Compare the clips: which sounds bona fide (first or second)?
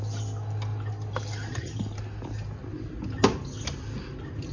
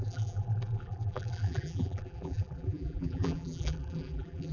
first